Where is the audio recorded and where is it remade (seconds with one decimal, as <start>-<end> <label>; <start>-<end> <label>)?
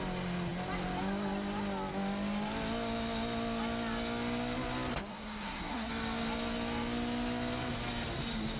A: 0.0-5.1 recorded; 5.1-5.9 remade; 5.9-8.6 recorded